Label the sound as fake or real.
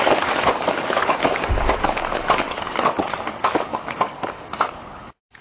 fake